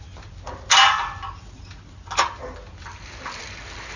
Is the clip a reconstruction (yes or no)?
no